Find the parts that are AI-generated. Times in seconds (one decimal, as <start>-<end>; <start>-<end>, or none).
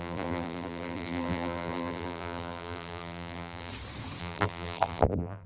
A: 0.0-3.7; 4.2-5.5